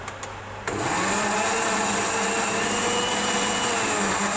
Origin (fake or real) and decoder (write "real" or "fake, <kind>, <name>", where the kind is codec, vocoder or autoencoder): real